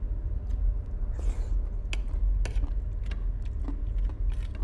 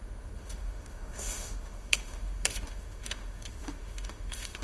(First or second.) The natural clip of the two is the first